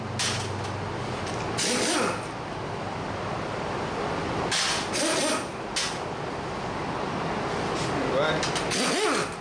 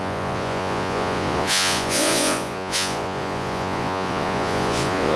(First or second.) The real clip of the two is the first